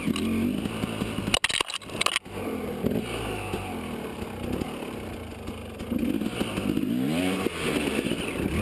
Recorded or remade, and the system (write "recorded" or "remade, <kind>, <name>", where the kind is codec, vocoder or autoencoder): recorded